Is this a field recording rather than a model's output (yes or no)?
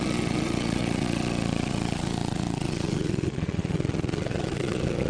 no